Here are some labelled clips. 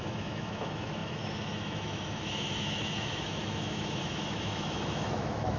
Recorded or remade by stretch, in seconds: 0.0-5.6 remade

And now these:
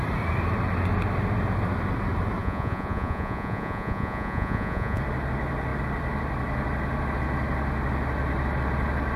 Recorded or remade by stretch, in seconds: 0.0-2.4 recorded; 2.4-5.0 remade; 5.0-9.2 recorded